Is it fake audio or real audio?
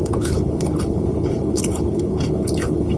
fake